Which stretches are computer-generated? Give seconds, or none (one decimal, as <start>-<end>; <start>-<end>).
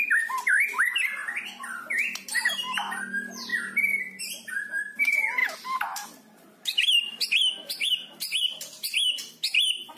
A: 5.4-7.2